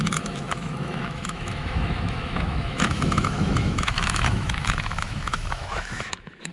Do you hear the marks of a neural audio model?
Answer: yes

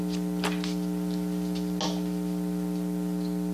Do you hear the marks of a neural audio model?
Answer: no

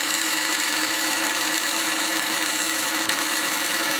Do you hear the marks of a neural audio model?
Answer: yes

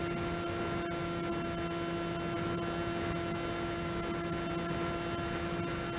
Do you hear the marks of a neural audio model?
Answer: no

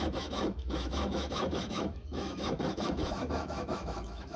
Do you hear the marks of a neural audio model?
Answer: yes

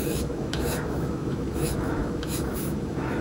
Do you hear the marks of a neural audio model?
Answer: yes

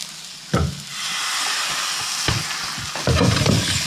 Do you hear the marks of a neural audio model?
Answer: no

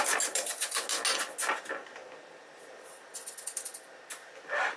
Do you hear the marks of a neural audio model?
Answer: no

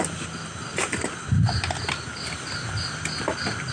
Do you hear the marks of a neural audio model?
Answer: no